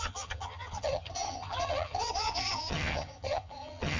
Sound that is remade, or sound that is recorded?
remade